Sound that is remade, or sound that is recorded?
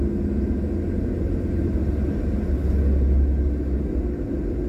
recorded